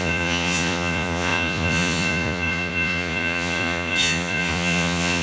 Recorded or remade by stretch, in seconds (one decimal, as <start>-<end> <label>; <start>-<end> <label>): 0.0-5.2 remade